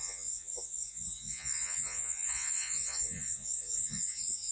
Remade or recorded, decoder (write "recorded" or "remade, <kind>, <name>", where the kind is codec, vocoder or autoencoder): remade, vocoder, Vocos